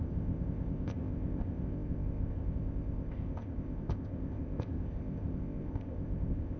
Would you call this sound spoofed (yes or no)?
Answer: yes